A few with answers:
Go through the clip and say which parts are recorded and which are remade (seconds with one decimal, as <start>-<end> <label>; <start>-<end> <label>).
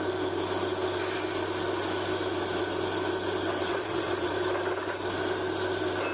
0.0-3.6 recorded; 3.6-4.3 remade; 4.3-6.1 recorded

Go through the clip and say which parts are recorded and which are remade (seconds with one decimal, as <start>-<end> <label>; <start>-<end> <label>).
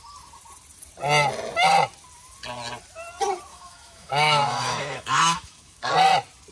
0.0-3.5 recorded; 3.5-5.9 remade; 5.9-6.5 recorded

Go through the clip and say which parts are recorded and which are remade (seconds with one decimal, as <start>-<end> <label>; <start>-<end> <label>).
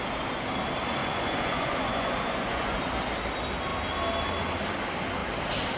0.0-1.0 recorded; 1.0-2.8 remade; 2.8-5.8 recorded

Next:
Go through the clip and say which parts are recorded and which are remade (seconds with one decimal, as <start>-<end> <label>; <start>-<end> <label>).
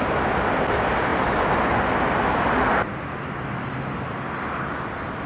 0.0-5.3 recorded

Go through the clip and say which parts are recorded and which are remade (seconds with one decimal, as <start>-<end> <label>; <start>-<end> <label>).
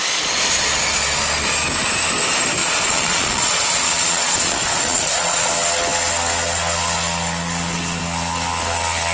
0.0-2.6 recorded; 2.6-5.5 remade; 5.5-9.1 recorded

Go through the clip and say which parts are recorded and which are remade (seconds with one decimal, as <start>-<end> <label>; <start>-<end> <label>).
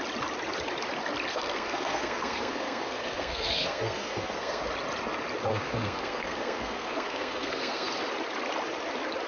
0.0-1.3 recorded; 1.3-4.6 remade; 4.6-5.5 recorded; 5.5-7.9 remade; 7.9-9.3 recorded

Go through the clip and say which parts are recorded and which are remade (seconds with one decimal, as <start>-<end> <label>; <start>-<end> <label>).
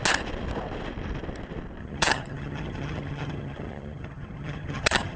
0.0-1.8 recorded; 1.8-5.2 remade